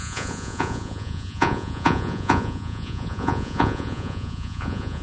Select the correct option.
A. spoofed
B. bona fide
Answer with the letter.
A